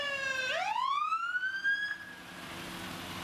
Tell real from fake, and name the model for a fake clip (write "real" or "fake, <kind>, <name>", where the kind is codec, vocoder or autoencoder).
real